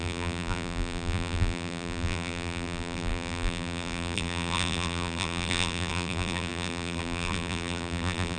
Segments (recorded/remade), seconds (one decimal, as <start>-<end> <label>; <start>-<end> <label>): 0.0-8.4 remade